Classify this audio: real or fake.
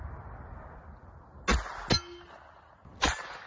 real